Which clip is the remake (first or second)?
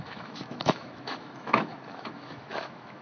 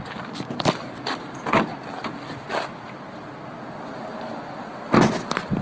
first